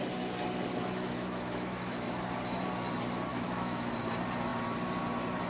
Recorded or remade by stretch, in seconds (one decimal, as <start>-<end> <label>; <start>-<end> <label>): 0.0-0.7 recorded; 0.7-2.2 remade; 2.2-3.3 recorded; 3.3-3.9 remade; 3.9-5.5 recorded